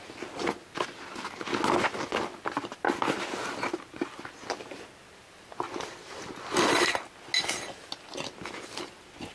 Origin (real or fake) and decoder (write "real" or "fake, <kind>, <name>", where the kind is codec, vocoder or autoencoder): real